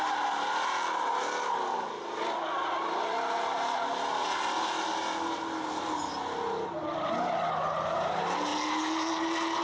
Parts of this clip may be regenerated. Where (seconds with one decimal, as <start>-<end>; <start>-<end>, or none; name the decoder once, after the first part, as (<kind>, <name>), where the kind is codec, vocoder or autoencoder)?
none